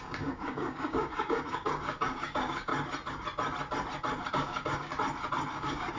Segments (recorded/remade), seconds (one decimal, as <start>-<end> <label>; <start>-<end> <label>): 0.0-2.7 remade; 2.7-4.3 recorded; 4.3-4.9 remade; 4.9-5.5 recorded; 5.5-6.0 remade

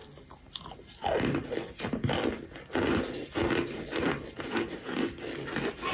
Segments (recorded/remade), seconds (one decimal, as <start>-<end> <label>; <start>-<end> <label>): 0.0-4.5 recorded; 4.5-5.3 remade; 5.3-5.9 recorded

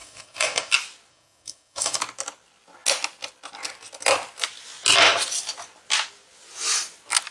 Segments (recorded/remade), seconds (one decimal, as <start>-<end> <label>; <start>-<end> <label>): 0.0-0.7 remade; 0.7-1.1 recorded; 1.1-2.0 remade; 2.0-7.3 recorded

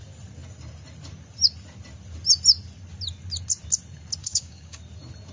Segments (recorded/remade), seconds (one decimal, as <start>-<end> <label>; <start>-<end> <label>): 0.0-4.2 recorded; 4.2-4.8 remade; 4.8-5.3 recorded